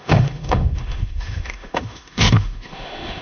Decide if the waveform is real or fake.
fake